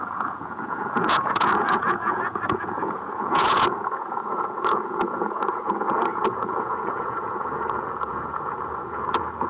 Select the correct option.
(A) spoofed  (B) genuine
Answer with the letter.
A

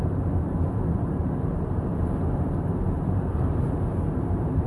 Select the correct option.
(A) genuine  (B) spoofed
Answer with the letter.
A